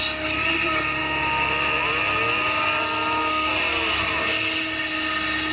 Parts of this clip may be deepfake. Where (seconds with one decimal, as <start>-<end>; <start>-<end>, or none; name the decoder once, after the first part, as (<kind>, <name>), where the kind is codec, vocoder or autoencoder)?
none